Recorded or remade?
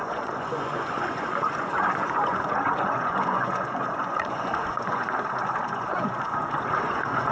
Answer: remade